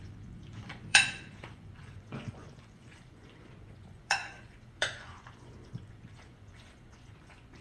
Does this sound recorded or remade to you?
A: remade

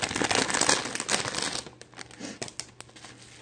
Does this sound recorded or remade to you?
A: recorded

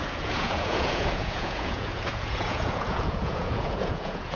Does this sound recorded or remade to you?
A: remade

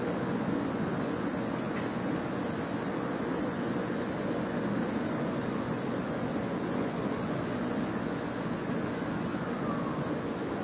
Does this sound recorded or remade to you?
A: remade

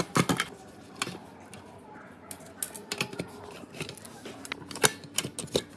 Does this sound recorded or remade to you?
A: recorded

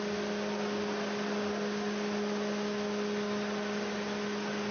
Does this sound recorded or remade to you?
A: recorded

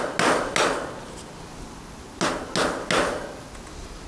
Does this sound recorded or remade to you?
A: recorded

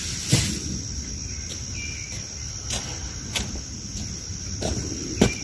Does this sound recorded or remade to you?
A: recorded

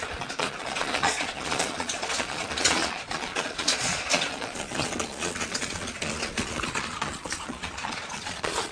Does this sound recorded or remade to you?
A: remade